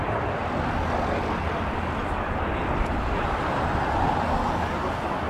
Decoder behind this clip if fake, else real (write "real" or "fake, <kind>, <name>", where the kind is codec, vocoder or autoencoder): real